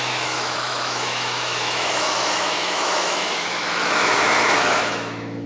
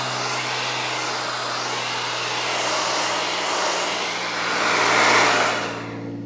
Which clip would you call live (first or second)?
second